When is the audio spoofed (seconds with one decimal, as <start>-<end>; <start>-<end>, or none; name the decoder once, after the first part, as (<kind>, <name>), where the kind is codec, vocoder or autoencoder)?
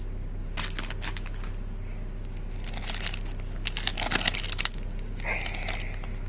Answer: none